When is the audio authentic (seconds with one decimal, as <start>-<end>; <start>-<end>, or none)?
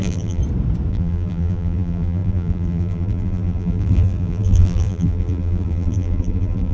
0.4-0.9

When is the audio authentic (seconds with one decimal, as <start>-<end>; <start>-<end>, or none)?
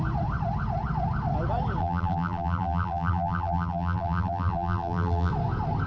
0.0-1.8; 5.3-5.9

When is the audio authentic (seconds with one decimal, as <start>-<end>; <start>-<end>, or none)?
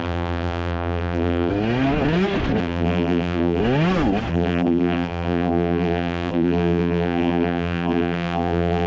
1.5-2.6; 3.6-4.3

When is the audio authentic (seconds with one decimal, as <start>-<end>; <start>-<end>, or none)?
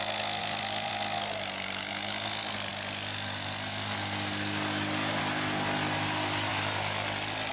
0.0-0.4; 0.9-7.5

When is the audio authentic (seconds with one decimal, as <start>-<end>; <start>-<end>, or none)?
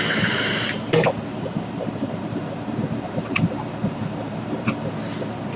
0.0-1.3; 4.7-5.6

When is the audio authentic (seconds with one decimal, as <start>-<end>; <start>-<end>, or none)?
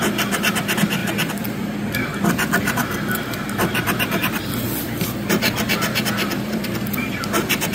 2.8-4.2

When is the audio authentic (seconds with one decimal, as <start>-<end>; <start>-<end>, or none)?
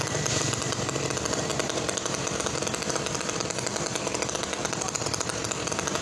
none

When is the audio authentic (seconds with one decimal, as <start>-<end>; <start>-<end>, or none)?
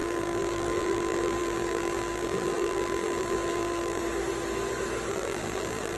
4.0-5.1